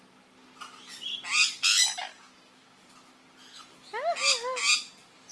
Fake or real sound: real